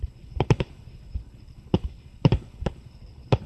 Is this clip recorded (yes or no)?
no